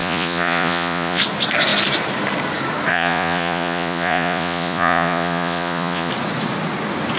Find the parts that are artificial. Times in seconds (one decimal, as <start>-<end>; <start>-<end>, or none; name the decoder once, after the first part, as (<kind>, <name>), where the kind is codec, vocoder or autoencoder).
0.0-1.2 (vocoder, Vocos); 2.9-6.1